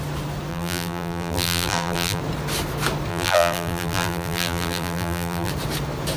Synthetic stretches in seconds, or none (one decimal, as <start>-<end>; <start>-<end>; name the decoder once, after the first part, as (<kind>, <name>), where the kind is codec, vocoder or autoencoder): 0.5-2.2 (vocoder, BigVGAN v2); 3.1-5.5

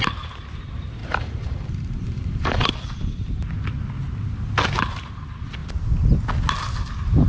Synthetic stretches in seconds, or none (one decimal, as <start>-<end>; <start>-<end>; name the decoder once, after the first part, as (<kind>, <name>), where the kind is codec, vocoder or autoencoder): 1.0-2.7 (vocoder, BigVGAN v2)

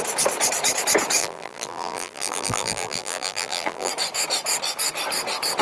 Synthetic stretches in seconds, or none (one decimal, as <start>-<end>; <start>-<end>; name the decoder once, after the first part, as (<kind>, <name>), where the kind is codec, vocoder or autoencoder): 1.2-3.9 (vocoder, BigVGAN v2)

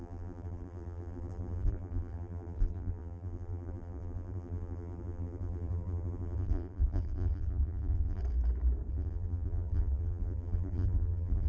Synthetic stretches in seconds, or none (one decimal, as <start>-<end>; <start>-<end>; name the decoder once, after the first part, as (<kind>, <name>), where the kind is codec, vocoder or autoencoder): 0.0-8.2 (vocoder, BigVGAN v2); 8.9-11.5

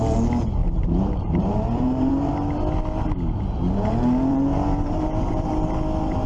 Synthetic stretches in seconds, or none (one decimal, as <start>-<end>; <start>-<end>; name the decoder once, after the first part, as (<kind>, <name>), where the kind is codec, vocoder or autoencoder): 0.6-2.3 (vocoder, BigVGAN v2); 4.3-5.5

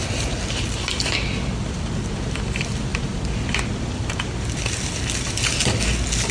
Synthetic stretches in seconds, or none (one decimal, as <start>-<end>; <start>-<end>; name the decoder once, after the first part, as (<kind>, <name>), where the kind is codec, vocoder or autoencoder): 2.9-3.4 (vocoder, BigVGAN v2)

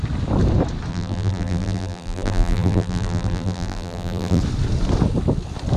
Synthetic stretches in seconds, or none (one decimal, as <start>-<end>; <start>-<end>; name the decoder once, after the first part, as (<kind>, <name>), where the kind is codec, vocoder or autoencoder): 0.9-4.4 (vocoder, BigVGAN v2)